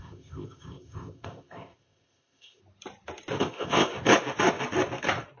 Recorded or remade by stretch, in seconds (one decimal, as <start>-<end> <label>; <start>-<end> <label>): 0.0-2.6 remade; 2.6-3.4 recorded; 3.4-3.9 remade; 3.9-5.4 recorded

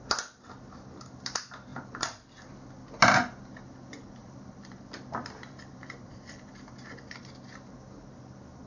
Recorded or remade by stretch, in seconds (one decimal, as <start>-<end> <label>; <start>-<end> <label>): 0.0-1.7 recorded; 1.7-2.5 remade; 2.5-4.2 recorded; 4.2-6.5 remade; 6.5-8.7 recorded

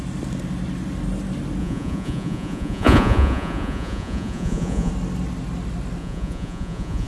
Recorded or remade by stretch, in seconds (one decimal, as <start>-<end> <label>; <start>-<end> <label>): 0.0-1.6 recorded; 1.6-4.9 remade; 4.9-6.0 recorded; 6.0-7.1 remade

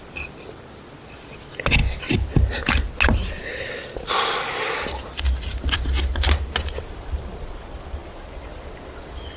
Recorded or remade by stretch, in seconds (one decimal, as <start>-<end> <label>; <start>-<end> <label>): 0.0-9.4 recorded

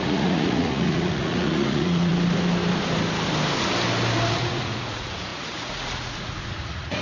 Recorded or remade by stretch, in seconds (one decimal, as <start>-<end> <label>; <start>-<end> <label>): 0.0-2.1 remade; 2.1-4.3 recorded; 4.3-7.0 remade

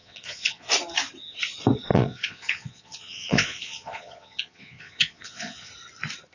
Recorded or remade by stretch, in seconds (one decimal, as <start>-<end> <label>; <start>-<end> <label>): 0.0-0.7 remade; 0.7-1.9 recorded; 1.9-5.7 remade; 5.7-6.3 recorded

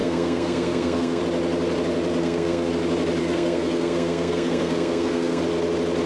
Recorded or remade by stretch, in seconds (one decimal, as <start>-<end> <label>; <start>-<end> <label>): 0.0-1.2 remade; 1.2-2.2 recorded; 2.2-2.7 remade; 2.7-3.2 recorded; 3.2-5.4 remade; 5.4-6.1 recorded

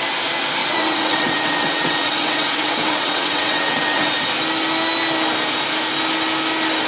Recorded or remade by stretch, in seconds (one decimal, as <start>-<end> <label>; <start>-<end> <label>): 0.0-0.6 recorded; 0.6-4.1 remade; 4.1-6.9 recorded